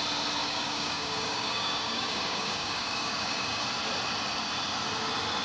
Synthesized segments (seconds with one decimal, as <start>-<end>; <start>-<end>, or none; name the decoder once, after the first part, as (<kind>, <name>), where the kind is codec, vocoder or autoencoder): 0.4-3.6 (codec, DAC)

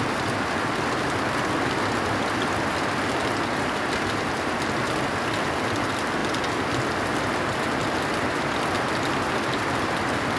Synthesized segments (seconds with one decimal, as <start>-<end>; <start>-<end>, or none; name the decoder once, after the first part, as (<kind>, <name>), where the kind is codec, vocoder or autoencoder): none

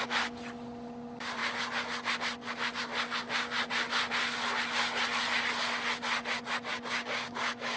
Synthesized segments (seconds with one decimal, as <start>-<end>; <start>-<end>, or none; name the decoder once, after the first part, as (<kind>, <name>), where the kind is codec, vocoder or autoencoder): 6.7-7.8 (codec, DAC)

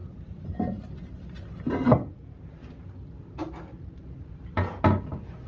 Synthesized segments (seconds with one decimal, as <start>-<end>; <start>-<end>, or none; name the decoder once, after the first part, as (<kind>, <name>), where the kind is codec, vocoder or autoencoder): none